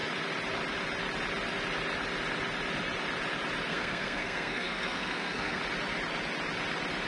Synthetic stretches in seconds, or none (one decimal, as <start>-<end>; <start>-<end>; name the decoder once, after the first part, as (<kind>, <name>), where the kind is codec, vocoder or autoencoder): 3.7-5.6 (codec, SNAC)